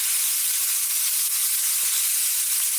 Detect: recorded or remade recorded